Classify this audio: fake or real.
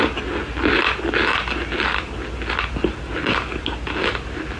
real